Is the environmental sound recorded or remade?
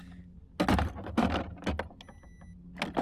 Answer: recorded